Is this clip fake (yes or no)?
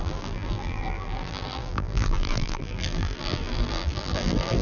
yes